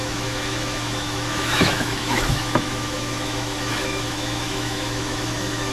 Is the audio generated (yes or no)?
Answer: yes